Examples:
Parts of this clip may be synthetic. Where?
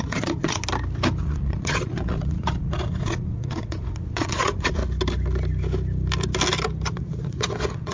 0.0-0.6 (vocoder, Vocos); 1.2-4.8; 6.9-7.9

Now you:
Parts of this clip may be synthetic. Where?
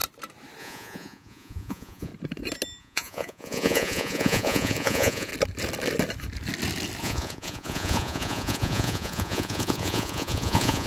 0.6-2.1 (vocoder, Vocos); 2.8-5.3; 7.0-10.9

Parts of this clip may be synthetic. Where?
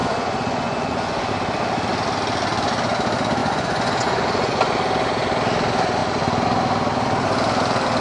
0.0-1.3 (vocoder, Vocos); 3.4-4.7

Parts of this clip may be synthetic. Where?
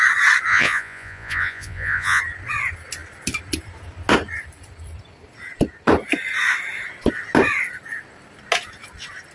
0.5-2.2 (vocoder, Vocos)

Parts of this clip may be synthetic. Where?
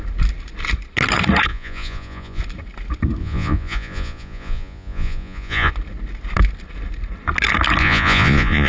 1.5-2.4 (vocoder, Vocos); 3.2-5.7; 7.8-8.7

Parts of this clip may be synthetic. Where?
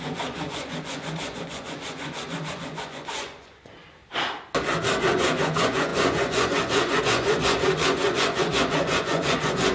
0.0-4.0 (vocoder, Vocos); 5.0-9.7